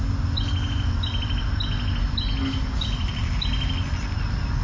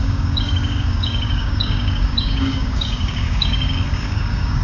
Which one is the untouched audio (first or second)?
first